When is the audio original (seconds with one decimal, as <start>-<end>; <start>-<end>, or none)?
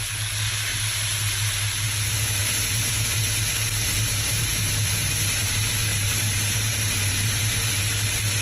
0.0-2.4; 5.4-5.9; 7.9-8.4